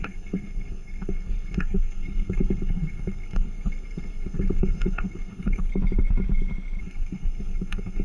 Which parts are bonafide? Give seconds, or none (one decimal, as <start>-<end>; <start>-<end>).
5.7-6.8